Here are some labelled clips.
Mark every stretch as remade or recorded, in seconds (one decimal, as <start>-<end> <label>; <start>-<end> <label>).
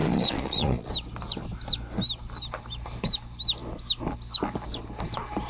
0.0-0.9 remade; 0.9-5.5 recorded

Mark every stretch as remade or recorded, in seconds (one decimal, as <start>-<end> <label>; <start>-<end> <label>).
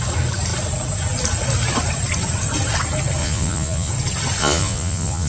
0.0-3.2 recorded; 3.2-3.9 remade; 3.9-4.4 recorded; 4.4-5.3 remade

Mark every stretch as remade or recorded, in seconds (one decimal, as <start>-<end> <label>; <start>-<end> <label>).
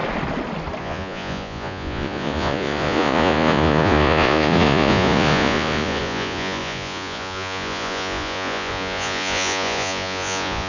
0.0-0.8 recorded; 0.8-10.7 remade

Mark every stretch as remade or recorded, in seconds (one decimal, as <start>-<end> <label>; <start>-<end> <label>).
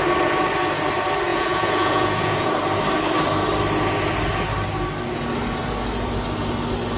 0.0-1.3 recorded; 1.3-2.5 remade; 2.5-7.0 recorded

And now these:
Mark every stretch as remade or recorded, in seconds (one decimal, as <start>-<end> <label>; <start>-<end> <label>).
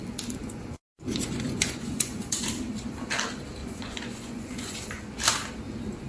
0.0-0.4 recorded; 0.4-2.4 remade; 2.4-3.6 recorded; 3.6-5.0 remade; 5.0-6.1 recorded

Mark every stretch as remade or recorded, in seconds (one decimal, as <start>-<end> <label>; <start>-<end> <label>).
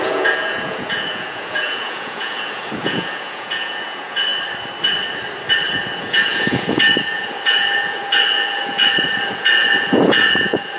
0.0-4.3 remade; 4.3-6.0 recorded; 6.0-10.8 remade